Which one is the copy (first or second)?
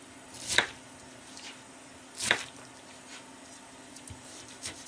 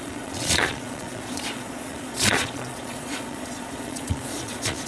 second